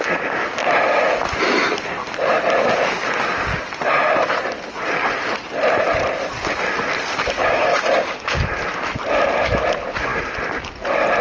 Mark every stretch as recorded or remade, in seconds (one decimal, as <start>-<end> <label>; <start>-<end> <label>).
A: 0.0-7.4 recorded; 7.4-8.4 remade; 8.4-11.2 recorded